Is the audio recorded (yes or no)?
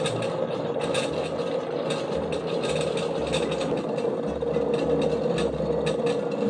yes